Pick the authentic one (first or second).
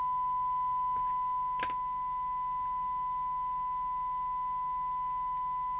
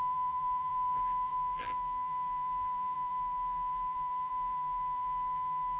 first